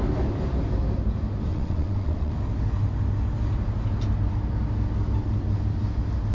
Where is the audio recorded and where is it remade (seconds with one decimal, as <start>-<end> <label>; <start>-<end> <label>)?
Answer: 0.0-1.5 recorded; 1.5-2.3 remade; 2.3-6.3 recorded

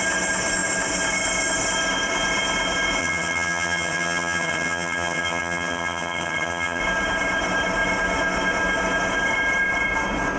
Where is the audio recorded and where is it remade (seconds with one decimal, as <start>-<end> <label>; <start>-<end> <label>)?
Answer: 0.0-3.0 recorded; 3.0-6.8 remade; 6.8-10.4 recorded